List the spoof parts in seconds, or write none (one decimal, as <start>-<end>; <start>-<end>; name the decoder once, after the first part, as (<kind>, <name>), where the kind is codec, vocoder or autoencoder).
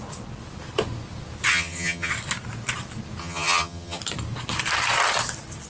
1.5-2.1 (vocoder, HiFi-GAN); 3.2-4.0